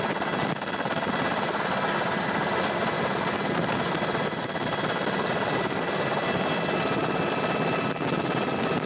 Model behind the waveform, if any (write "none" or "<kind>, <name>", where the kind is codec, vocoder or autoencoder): none